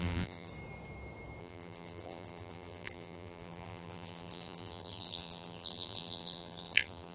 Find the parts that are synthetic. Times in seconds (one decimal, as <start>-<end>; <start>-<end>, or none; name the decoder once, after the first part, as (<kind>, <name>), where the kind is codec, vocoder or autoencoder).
0.0-0.5 (vocoder, BigVGAN v2); 1.4-7.1

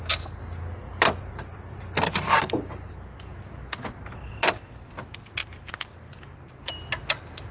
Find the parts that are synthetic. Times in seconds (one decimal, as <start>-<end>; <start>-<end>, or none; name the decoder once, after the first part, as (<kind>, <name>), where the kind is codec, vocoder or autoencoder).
0.8-2.9 (vocoder, BigVGAN v2); 5.4-6.7

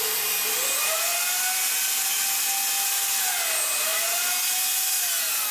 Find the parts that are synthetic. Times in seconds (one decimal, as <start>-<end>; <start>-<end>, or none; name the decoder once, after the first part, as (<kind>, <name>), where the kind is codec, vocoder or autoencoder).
0.0-1.1 (vocoder, BigVGAN v2); 3.2-3.9

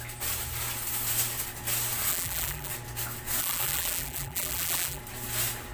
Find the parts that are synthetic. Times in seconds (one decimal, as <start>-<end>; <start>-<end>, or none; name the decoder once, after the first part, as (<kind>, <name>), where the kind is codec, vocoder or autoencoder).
2.1-2.7 (vocoder, BigVGAN v2); 3.4-5.0

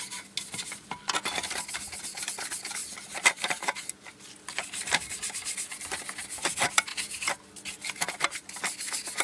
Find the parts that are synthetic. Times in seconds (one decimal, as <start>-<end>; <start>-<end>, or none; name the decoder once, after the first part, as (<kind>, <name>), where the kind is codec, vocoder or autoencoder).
2.8-4.1 (vocoder, BigVGAN v2); 4.6-5.2

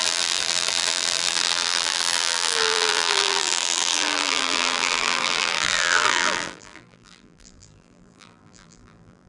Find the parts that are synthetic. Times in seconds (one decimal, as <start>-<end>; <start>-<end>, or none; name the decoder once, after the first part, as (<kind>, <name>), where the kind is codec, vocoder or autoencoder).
0.0-9.3 (vocoder, BigVGAN v2)

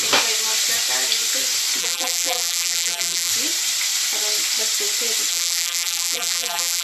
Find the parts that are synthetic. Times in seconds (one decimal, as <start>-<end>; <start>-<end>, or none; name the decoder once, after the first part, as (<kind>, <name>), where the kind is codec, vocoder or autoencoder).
1.8-3.3 (vocoder, BigVGAN v2); 5.3-6.8

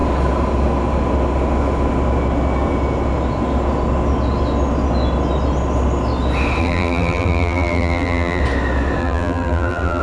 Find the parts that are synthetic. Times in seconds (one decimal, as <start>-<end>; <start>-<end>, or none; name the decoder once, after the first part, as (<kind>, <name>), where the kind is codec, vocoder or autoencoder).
6.6-8.4 (vocoder, BigVGAN v2); 9.0-10.0